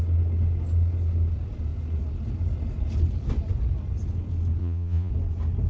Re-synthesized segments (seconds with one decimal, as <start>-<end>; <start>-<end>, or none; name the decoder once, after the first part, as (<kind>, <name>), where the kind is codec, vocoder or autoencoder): 4.6-5.1 (vocoder, Vocos)